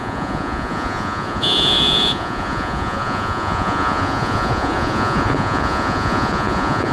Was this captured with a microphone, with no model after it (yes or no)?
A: no